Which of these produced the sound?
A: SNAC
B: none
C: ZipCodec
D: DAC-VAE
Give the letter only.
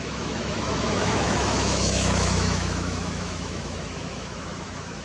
D